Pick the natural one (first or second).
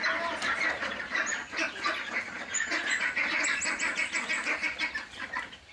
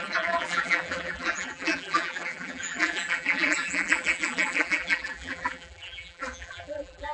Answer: first